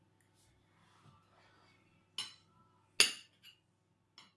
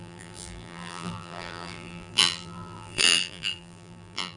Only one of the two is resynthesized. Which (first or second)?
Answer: second